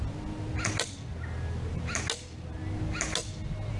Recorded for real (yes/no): yes